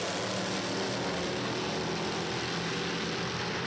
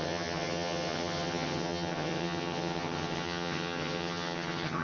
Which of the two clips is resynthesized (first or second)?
second